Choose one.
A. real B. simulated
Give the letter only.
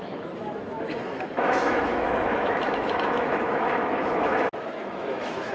B